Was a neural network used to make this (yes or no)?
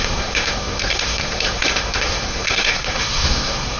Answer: yes